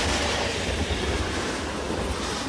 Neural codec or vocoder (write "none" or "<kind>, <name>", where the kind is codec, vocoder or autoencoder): none